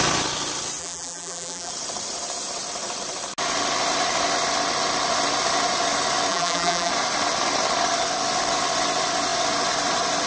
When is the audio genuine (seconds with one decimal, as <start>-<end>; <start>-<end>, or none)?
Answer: 0.0-0.8; 1.7-6.3; 6.9-10.3